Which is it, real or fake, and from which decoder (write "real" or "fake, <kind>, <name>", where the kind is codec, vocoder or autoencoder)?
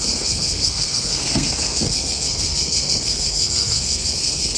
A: fake, codec, SNAC